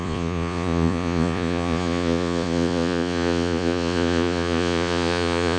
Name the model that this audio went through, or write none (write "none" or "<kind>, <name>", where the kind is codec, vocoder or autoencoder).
vocoder, Vocos